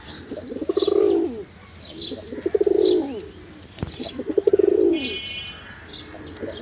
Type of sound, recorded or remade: recorded